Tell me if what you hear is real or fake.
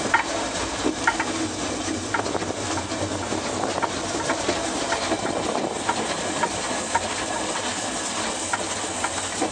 real